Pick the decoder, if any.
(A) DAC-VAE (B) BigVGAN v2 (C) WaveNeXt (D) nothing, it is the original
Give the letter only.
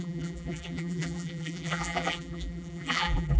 B